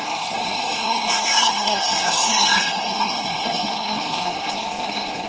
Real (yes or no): no